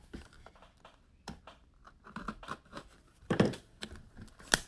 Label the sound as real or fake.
fake